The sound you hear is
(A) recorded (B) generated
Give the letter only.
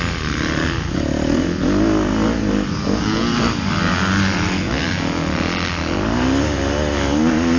A